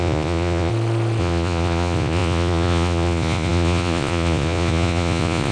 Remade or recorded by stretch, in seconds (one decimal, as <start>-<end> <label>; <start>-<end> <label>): 0.0-0.7 remade; 0.7-1.2 recorded; 1.2-5.5 remade